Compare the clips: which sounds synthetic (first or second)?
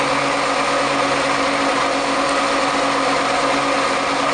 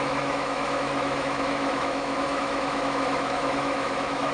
second